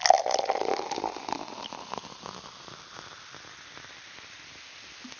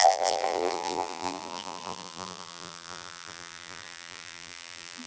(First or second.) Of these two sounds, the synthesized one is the second